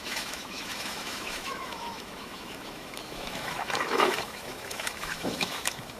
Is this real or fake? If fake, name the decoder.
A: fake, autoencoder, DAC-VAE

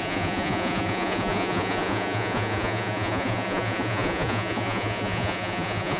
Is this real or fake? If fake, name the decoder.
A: fake, vocoder, Vocos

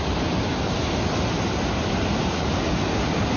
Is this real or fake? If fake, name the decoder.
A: real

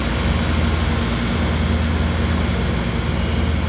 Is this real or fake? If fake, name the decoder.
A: real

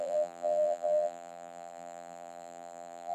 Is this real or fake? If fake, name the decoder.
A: fake, vocoder, BigVGAN v2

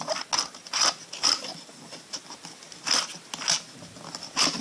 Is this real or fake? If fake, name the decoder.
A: real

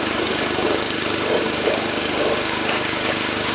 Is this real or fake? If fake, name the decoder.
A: fake, codec, DAC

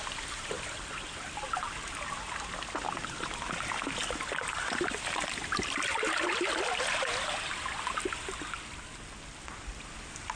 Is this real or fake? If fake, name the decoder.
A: real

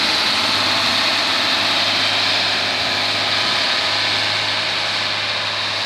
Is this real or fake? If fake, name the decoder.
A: real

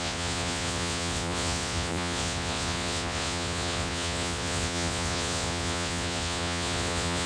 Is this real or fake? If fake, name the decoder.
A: fake, vocoder, Vocos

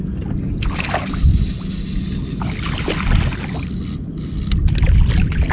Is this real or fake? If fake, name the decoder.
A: real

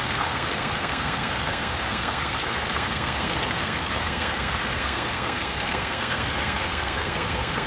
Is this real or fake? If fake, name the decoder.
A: fake, codec, SNAC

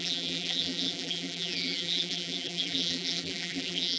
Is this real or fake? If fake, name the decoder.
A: fake, vocoder, BigVGAN v2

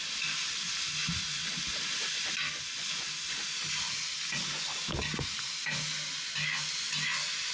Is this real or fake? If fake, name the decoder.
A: real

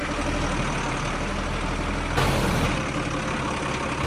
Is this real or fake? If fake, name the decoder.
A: real